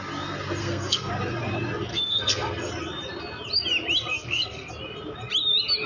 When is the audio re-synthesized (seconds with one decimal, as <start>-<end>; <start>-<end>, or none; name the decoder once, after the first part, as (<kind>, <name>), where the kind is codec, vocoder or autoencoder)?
0.6-1.1 (codec, SNAC); 1.9-2.7; 4.1-4.7